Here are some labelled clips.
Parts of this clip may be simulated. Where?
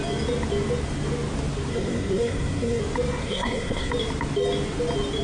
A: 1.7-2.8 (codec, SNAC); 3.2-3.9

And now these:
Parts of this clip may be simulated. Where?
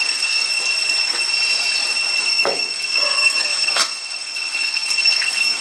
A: 0.0-0.5 (codec, SNAC); 2.2-5.6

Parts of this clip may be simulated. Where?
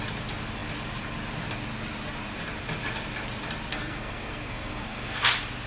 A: 3.7-5.3 (codec, SNAC)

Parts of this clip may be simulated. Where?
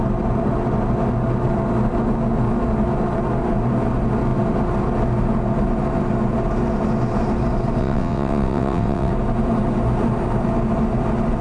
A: 7.8-9.1 (vocoder, WaveNeXt)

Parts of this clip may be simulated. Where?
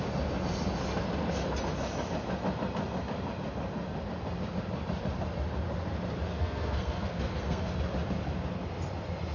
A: 6.3-7.7 (codec, SNAC)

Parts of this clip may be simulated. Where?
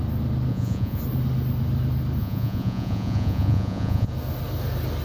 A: 0.5-1.0 (vocoder, Vocos); 2.2-4.1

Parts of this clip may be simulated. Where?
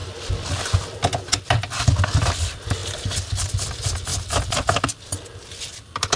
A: none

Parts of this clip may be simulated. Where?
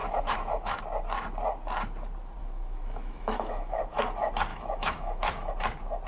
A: 0.0-0.8 (autoencoder, DAC-VAE); 2.4-3.8; 4.5-5.5